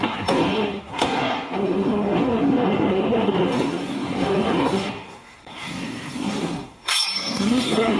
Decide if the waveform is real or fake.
fake